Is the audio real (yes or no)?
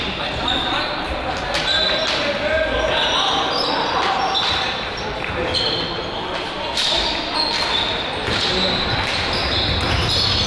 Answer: yes